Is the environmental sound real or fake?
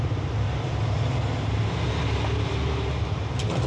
real